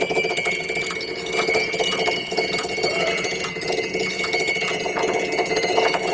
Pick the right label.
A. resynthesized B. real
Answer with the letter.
A